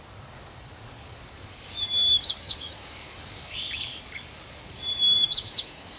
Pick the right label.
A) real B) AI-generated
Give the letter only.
B